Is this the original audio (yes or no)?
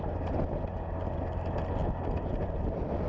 yes